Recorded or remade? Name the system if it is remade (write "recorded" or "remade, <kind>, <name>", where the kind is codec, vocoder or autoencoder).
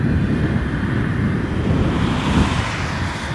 recorded